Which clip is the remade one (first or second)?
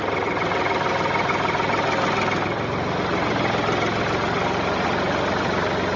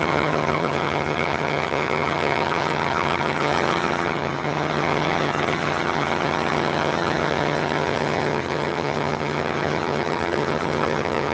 second